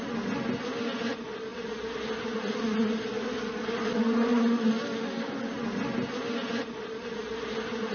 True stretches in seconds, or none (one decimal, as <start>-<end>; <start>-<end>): 0.0-7.9